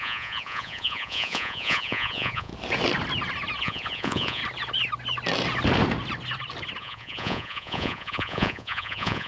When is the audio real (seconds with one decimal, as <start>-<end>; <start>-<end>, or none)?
2.5-3.6; 4.4-6.8